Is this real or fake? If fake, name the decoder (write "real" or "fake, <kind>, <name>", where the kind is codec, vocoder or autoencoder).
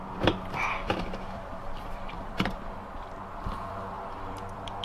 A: fake, vocoder, BigVGAN v2